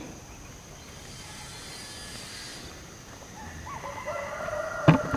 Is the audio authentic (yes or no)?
yes